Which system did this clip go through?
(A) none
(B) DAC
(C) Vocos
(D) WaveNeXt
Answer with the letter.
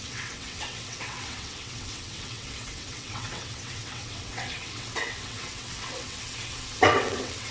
D